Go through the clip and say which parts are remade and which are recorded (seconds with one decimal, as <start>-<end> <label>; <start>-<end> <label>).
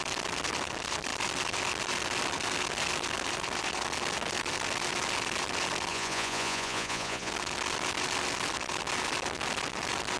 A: 0.0-5.9 recorded; 5.9-7.3 remade; 7.3-10.2 recorded